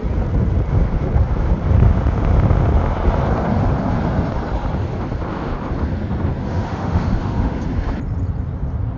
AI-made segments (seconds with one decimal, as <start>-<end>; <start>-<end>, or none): 6.4-7.6